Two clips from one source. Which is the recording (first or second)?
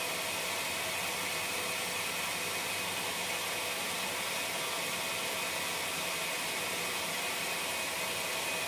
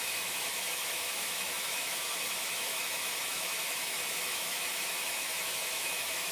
first